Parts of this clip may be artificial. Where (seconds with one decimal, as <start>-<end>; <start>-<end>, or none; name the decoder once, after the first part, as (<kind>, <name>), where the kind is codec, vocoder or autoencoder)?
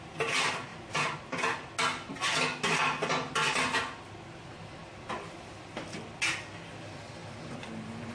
none